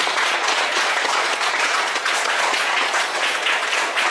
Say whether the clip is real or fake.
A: fake